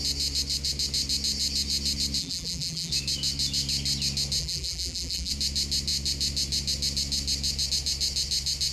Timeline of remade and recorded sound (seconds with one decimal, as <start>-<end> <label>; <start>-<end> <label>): 0.0-2.2 recorded; 2.2-2.9 remade; 2.9-4.4 recorded; 4.4-5.3 remade; 5.3-8.7 recorded